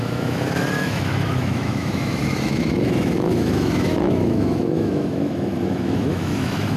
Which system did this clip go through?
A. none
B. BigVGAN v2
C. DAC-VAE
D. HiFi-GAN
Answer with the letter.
C